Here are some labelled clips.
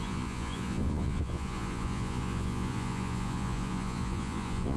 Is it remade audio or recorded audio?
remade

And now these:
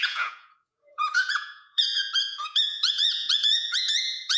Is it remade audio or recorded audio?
remade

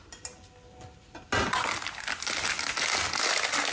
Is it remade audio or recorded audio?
recorded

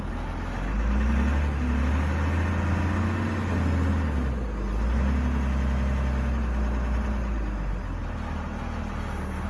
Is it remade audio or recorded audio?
recorded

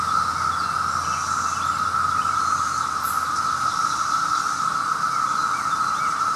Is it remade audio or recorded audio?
recorded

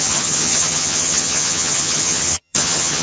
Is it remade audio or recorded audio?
remade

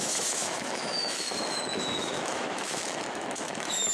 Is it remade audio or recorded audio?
remade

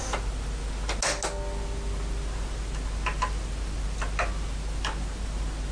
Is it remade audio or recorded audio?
recorded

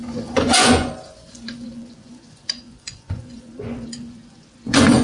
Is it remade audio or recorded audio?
remade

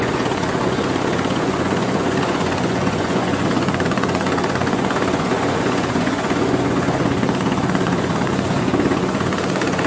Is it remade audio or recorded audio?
remade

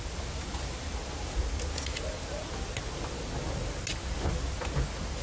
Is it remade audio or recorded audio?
recorded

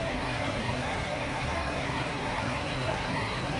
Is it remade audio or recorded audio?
remade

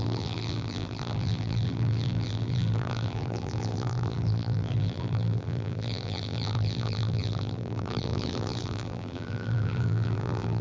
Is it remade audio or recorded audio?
remade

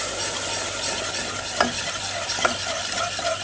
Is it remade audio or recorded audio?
recorded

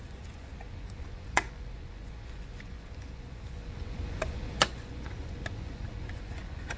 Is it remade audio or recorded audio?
remade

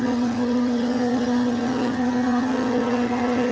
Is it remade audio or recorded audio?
remade